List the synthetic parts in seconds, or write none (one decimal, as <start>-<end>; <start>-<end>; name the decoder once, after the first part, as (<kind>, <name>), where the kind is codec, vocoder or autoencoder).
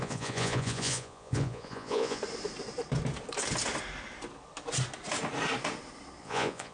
0.0-2.2 (vocoder, Vocos); 6.2-6.7